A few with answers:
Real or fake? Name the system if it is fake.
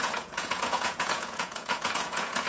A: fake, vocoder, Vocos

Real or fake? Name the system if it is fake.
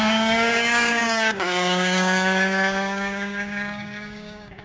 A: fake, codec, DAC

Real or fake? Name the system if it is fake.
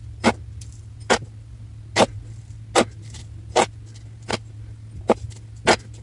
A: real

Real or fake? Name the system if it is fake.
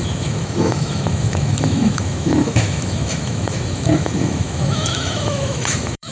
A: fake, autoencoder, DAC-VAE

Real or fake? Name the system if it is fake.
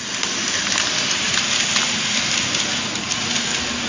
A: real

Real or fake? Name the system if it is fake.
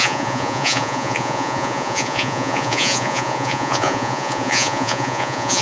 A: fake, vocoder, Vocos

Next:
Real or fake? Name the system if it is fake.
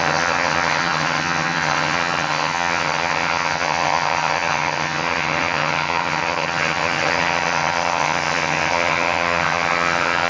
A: fake, vocoder, HiFi-GAN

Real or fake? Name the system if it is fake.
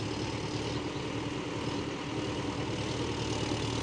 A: real